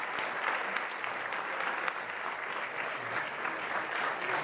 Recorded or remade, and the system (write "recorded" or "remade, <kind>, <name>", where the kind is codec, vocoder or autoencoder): recorded